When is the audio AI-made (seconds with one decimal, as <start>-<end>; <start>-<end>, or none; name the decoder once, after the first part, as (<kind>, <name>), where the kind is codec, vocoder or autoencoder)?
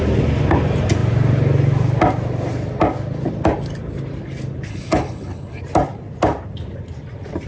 4.7-5.6 (codec, HILCodec)